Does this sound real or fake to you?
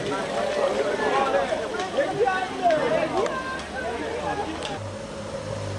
real